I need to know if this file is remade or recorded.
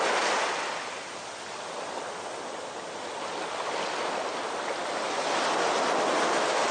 recorded